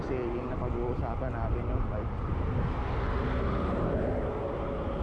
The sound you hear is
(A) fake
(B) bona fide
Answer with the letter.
B